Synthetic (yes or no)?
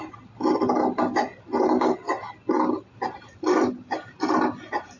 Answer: no